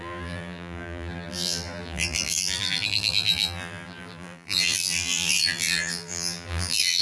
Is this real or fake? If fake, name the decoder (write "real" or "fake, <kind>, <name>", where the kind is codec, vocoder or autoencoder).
fake, vocoder, BigVGAN v2